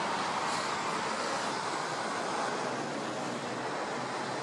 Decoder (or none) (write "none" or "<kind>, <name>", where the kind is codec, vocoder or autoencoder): none